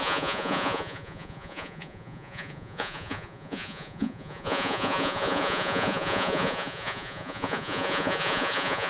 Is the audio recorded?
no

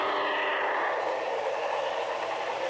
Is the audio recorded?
yes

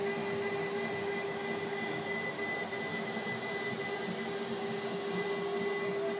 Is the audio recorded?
yes